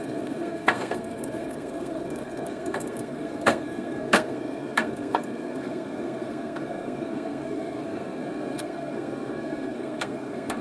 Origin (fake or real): fake